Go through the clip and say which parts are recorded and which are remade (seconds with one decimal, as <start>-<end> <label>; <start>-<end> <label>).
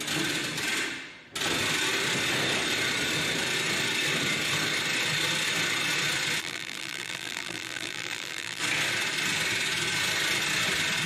0.0-6.4 recorded; 6.4-8.6 remade; 8.6-11.1 recorded